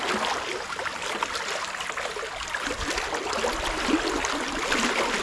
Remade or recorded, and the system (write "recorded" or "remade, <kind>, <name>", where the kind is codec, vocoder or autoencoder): recorded